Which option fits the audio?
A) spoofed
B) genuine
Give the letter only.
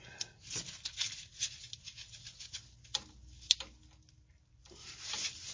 B